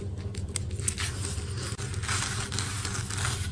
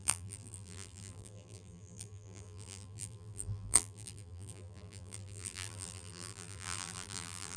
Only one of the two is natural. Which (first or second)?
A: first